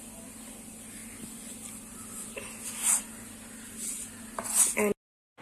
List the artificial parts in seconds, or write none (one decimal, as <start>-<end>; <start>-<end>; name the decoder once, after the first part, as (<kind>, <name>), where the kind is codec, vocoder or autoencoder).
none